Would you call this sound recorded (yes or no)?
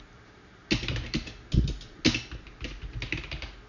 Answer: yes